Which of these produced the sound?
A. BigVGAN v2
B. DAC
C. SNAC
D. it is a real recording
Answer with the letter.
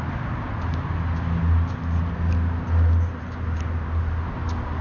D